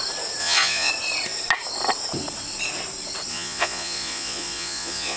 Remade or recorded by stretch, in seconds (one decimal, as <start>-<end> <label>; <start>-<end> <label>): 0.0-0.4 recorded; 0.4-0.9 remade; 0.9-3.3 recorded; 3.3-5.2 remade